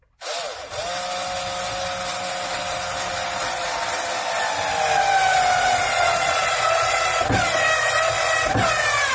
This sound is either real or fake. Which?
real